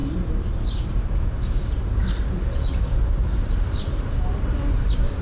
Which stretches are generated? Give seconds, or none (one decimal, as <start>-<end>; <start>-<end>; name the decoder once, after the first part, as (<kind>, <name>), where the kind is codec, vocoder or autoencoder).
2.7-5.2 (vocoder, BigVGAN v2)